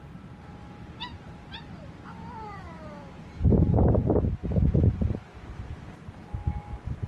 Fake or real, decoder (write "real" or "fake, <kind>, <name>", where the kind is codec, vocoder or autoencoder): real